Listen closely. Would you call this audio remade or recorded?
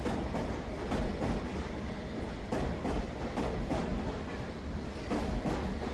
recorded